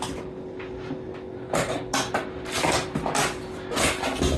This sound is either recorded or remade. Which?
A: recorded